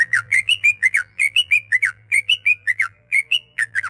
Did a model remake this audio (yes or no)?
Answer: yes